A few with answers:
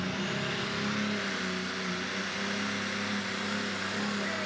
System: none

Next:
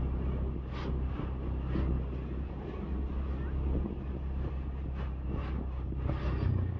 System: none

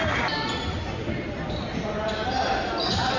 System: none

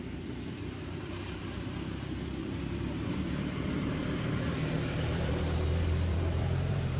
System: vocoder, BigVGAN v2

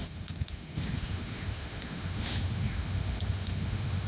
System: autoencoder, DAC-VAE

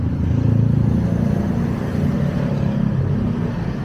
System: none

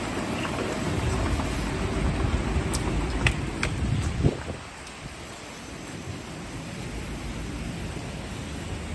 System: none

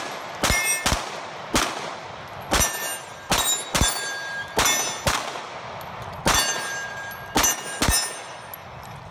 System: none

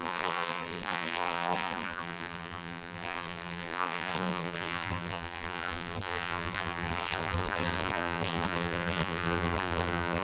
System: vocoder, BigVGAN v2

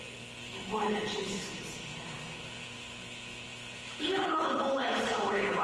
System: codec, HILCodec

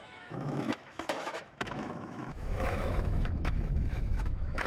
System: autoencoder, DAC-VAE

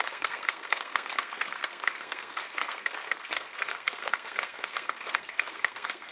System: codec, SNAC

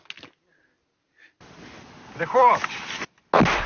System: none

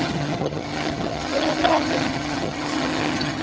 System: vocoder, HiFi-GAN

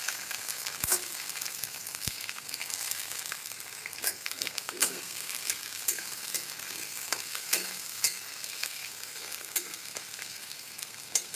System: codec, SNAC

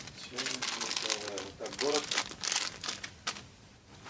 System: none